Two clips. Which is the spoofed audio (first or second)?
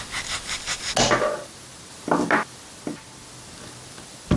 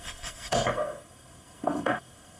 second